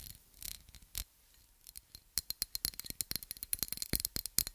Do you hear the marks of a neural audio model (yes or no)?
no